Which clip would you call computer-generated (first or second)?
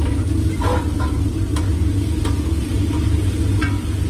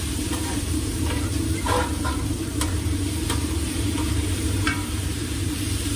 second